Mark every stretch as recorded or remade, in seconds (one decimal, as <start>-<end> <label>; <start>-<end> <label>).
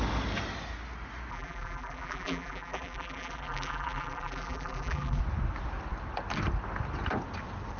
0.0-1.3 recorded; 1.3-5.2 remade; 5.2-7.8 recorded